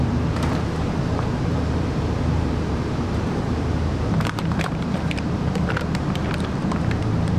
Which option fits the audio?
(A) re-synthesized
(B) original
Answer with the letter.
A